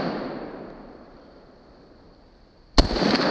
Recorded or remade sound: recorded